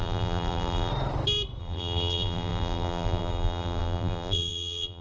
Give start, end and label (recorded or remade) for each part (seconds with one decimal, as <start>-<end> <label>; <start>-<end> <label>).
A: 0.0-0.9 remade; 0.9-1.6 recorded; 1.6-5.0 remade